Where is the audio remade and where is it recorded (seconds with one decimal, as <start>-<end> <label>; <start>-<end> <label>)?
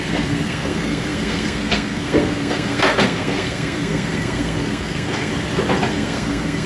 0.0-5.3 remade; 5.3-5.9 recorded; 5.9-6.7 remade